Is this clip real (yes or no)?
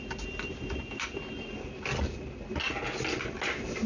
yes